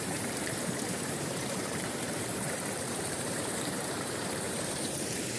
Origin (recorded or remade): remade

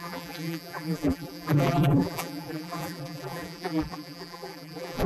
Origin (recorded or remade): remade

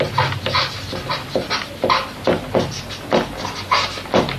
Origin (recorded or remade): remade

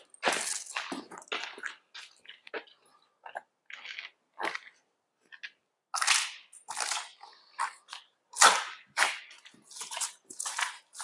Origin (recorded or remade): recorded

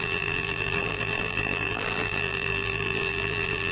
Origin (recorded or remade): remade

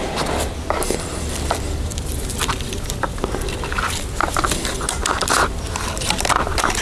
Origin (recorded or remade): remade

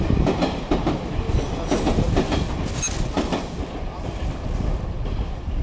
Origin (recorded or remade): recorded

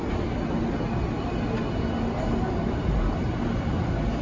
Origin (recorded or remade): recorded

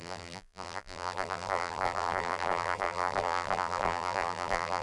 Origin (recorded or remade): remade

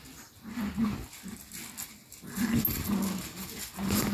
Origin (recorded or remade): recorded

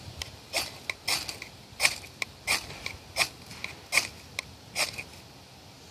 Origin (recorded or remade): recorded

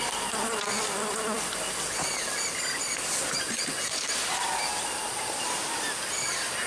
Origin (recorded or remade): recorded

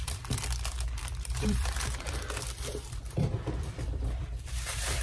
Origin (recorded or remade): remade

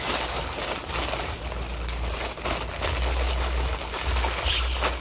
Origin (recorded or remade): recorded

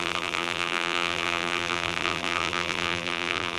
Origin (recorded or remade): remade